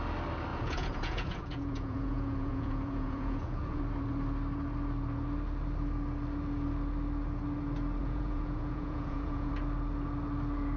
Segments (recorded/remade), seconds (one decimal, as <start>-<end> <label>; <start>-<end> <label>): 0.0-0.5 recorded; 0.5-3.8 remade; 3.8-8.0 recorded; 8.0-9.5 remade; 9.5-10.8 recorded